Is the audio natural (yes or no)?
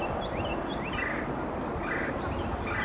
yes